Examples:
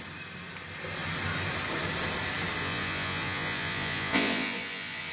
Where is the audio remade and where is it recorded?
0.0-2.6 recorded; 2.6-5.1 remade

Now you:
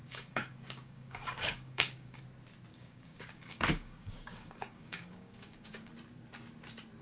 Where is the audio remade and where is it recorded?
0.0-2.2 remade; 2.2-2.7 recorded; 2.7-5.9 remade; 5.9-7.0 recorded